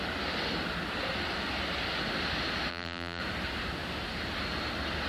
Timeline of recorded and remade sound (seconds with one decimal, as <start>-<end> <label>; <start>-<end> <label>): 0.0-2.7 recorded; 2.7-3.2 remade; 3.2-5.1 recorded